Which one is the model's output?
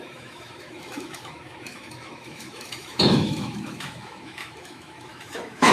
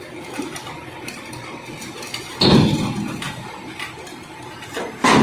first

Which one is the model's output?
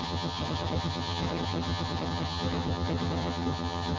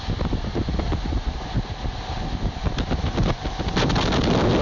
first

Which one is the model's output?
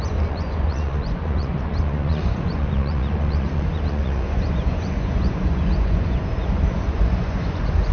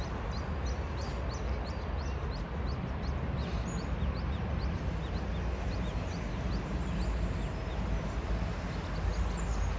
first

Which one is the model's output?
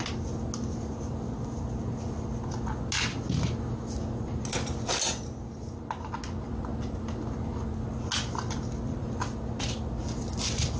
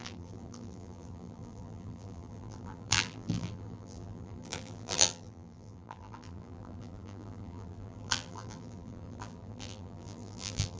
second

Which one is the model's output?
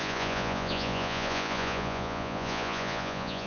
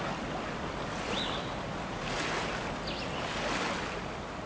first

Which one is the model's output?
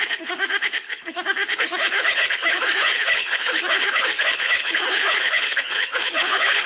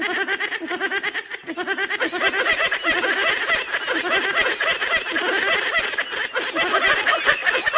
first